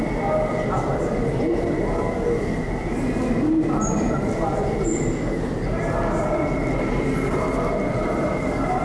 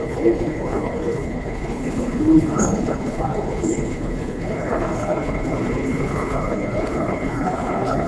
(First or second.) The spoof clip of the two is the second